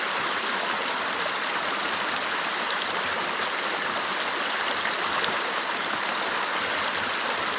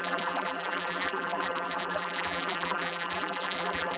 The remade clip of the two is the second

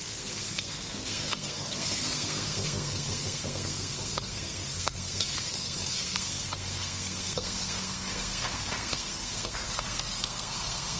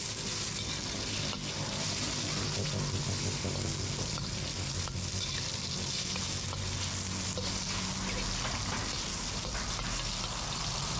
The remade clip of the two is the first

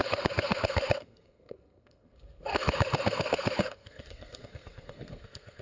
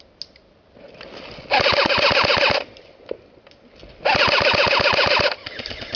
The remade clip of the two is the first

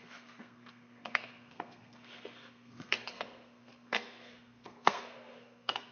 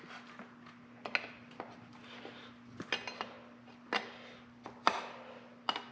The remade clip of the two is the first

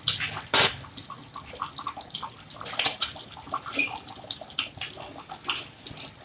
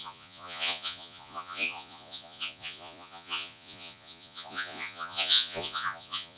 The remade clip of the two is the second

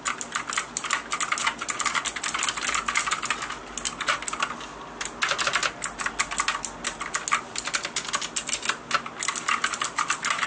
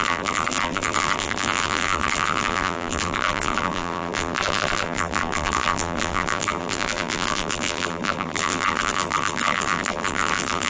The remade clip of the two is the second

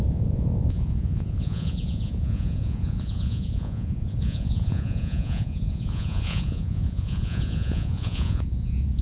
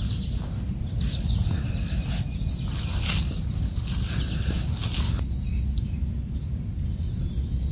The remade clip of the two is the first